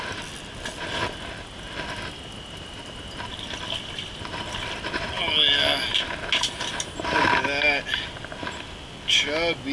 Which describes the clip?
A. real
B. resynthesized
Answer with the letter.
A